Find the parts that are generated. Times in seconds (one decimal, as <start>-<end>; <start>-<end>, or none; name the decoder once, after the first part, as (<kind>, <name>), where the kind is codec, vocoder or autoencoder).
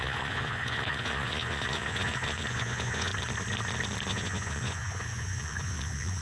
0.0-3.1 (vocoder, Vocos); 4.1-6.2